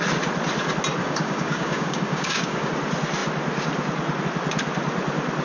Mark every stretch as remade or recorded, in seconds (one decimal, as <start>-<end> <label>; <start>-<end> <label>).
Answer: 0.0-1.0 recorded; 1.0-2.7 remade; 2.7-5.4 recorded